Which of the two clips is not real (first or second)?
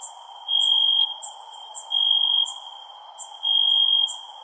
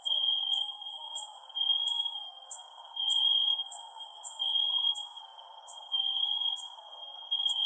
second